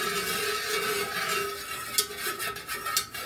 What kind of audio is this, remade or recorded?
recorded